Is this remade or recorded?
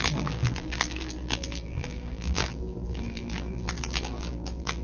remade